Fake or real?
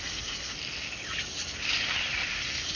real